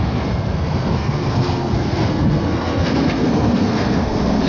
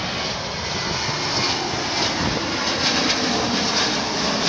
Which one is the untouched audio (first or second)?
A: second